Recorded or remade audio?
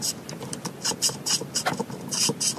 recorded